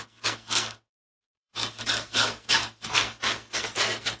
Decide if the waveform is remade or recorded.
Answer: remade